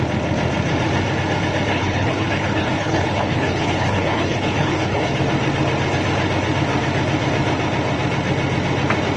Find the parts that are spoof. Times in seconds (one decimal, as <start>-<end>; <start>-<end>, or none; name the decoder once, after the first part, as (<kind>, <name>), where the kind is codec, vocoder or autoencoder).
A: 1.7-5.1 (codec, HILCodec)